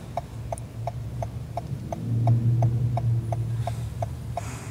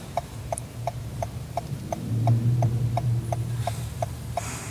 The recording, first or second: first